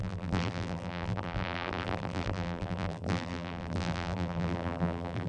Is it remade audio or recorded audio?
remade